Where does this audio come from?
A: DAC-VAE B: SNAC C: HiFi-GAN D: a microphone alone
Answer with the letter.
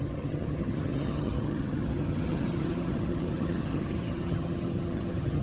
C